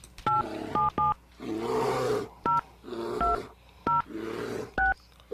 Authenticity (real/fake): real